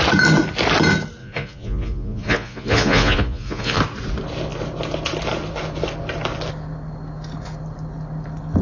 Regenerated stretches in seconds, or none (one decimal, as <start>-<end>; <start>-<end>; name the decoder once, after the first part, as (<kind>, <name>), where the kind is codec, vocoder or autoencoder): 1.2-3.8 (vocoder, Vocos)